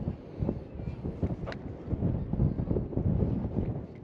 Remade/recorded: recorded